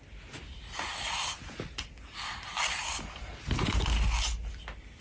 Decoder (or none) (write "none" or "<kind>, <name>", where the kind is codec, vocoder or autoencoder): none